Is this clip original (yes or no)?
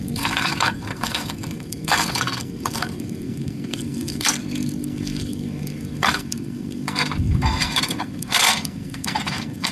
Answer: no